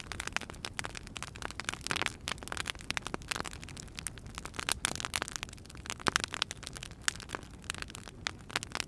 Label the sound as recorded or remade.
recorded